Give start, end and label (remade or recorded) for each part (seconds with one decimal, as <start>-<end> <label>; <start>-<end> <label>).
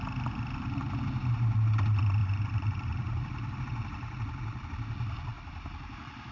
0.0-2.2 recorded; 2.2-3.6 remade; 3.6-5.3 recorded; 5.3-6.3 remade